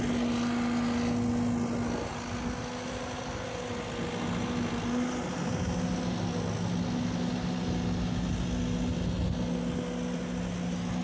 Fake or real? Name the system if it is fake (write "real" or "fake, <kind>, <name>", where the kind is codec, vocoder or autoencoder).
real